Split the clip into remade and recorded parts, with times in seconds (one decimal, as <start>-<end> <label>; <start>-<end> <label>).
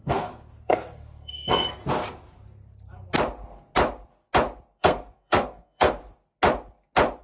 0.0-1.8 remade; 1.8-4.8 recorded; 4.8-6.0 remade; 6.0-7.2 recorded